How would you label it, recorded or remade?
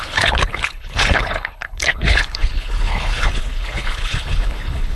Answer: remade